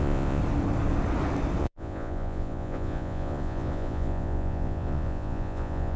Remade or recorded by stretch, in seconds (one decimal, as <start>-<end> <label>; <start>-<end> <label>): 0.0-0.4 remade; 0.4-1.6 recorded; 1.6-6.0 remade